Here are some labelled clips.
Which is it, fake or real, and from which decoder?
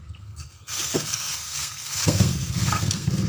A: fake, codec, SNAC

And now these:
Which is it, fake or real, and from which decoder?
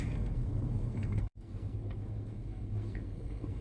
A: fake, codec, SNAC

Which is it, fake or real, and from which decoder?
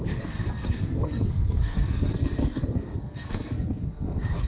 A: fake, codec, SNAC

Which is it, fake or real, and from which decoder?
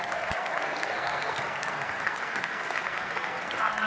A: fake, codec, SNAC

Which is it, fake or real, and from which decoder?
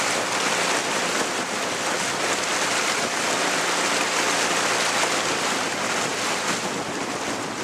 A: real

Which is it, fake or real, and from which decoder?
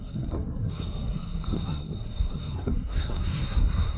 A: fake, codec, SNAC